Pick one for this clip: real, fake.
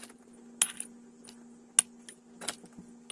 real